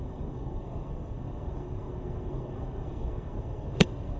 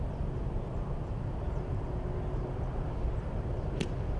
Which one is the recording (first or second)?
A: second